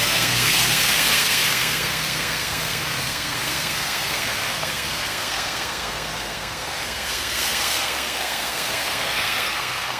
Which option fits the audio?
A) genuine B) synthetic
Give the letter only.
B